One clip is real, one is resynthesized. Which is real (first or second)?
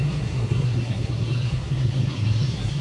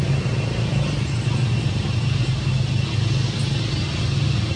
second